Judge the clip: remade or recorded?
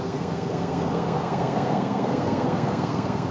remade